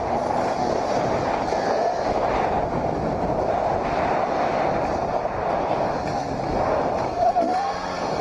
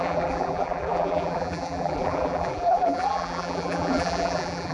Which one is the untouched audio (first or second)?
first